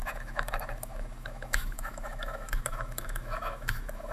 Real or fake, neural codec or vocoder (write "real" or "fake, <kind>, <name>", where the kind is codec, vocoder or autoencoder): fake, autoencoder, DAC-VAE